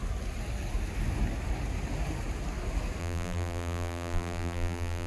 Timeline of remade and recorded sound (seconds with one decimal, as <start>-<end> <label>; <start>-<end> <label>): 0.0-3.0 recorded; 3.0-5.1 remade